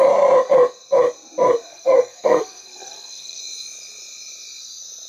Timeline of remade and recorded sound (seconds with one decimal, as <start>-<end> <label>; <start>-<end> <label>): 0.0-1.7 recorded; 1.7-3.4 remade; 3.4-5.1 recorded